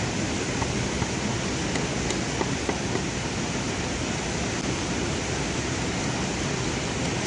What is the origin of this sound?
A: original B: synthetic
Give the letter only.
A